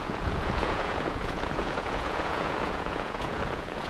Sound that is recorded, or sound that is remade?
remade